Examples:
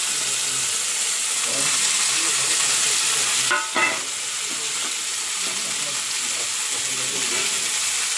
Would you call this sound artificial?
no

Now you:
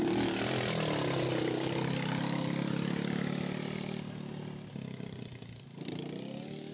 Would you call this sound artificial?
no